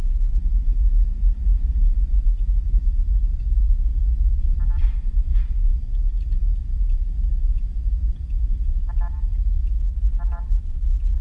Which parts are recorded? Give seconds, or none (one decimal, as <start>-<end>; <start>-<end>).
2.8-4.7